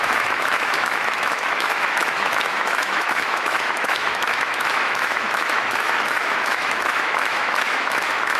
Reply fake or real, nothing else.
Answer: fake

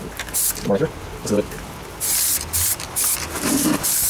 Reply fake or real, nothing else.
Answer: real